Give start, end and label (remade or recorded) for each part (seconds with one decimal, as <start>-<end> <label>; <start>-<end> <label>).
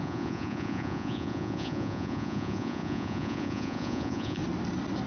0.0-4.4 remade; 4.4-5.1 recorded